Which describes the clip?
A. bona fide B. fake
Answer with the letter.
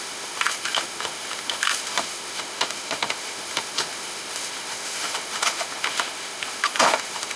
B